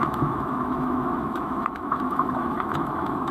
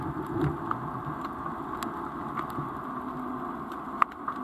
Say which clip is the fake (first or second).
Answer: first